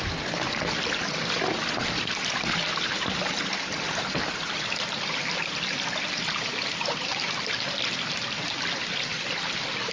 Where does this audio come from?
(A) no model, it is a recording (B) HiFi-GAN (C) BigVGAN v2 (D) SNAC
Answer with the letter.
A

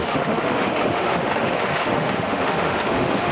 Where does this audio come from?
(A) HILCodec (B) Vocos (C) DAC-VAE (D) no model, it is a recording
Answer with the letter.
C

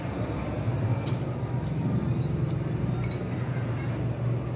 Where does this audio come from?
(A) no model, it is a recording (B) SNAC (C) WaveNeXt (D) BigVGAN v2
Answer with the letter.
A